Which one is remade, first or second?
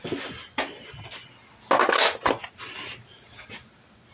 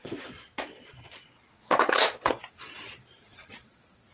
second